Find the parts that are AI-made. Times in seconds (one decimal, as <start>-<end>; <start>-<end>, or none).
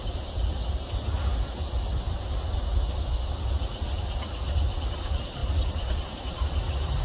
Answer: none